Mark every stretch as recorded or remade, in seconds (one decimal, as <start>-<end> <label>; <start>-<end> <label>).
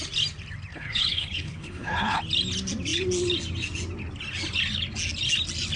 0.0-0.7 recorded; 0.7-2.2 remade; 2.2-5.8 recorded